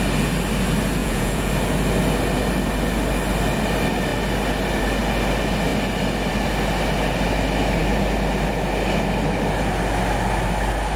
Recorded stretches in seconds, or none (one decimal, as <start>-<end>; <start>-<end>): 0.0-1.0; 1.5-11.0

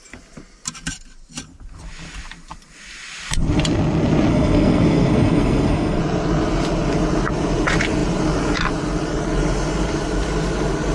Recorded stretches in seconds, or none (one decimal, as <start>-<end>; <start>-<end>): 0.0-4.3; 6.0-10.9

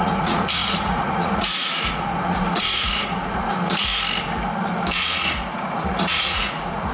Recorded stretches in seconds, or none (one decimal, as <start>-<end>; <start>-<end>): 3.9-4.9